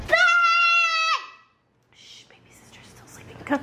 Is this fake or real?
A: real